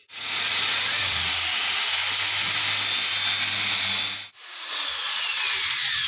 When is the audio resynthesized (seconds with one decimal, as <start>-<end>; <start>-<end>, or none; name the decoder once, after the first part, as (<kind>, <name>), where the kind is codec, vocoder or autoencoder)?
0.0-2.0 (vocoder, Vocos); 4.5-6.1